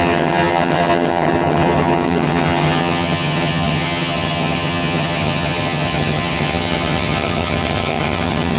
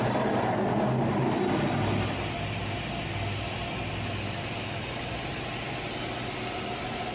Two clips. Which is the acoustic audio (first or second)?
second